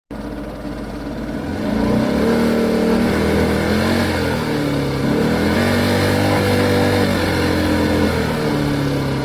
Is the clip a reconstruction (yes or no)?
no